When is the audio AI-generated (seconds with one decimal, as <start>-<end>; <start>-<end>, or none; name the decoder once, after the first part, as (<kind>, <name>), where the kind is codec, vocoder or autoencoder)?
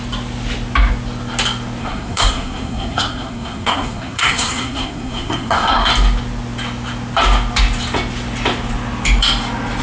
1.8-5.9 (codec, SNAC)